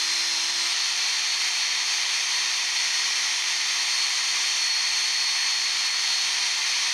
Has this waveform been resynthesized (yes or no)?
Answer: no